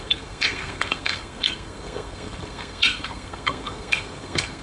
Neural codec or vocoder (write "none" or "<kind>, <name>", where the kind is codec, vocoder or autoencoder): codec, SNAC